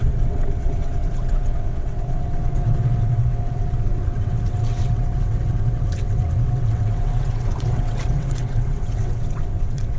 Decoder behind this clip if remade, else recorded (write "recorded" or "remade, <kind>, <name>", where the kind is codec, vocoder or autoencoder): remade, vocoder, WaveNeXt